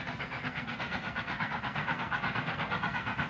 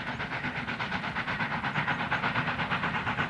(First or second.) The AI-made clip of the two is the first